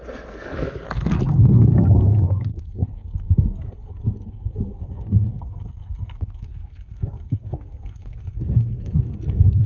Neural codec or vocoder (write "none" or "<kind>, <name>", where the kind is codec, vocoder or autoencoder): codec, SNAC